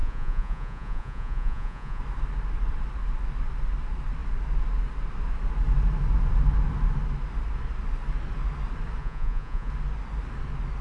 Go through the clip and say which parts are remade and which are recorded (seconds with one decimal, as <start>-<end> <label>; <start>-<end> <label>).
0.0-2.0 remade; 2.0-9.0 recorded; 9.0-9.7 remade; 9.7-10.8 recorded